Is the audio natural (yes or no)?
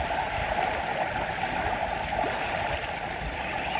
yes